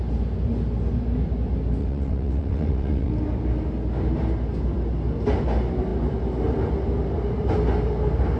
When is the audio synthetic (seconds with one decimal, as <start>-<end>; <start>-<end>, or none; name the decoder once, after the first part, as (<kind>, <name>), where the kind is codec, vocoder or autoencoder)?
1.8-3.1 (vocoder, WaveNeXt)